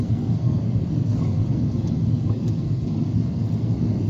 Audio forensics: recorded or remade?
remade